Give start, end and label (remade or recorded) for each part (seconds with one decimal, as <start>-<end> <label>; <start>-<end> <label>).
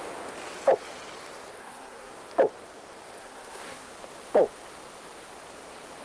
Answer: 0.0-1.6 recorded; 1.6-2.1 remade; 2.1-3.2 recorded; 3.2-3.9 remade; 3.9-6.0 recorded